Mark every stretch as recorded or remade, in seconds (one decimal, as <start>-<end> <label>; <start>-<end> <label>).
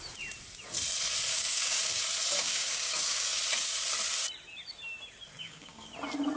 0.0-1.3 recorded; 1.3-2.0 remade; 2.0-2.4 recorded; 2.4-3.4 remade; 3.4-5.4 recorded; 5.4-5.9 remade; 5.9-6.4 recorded